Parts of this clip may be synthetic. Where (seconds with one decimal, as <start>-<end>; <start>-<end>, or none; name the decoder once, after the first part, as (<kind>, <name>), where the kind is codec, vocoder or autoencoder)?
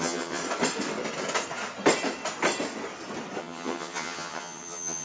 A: 0.0-0.4 (vocoder, HiFi-GAN); 3.4-5.0